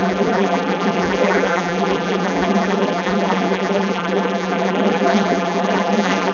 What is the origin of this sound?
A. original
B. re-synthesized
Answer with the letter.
B